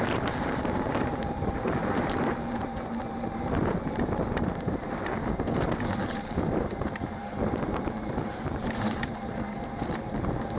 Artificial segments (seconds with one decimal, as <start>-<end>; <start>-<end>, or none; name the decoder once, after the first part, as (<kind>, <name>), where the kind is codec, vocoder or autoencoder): 0.0-10.6 (vocoder, BigVGAN v2)